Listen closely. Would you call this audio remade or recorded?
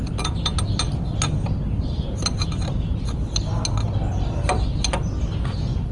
recorded